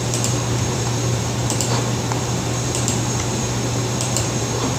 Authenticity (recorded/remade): remade